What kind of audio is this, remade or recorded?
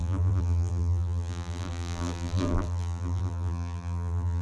remade